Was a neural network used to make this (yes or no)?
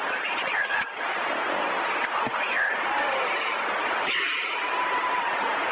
yes